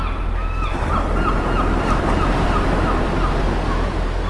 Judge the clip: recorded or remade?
recorded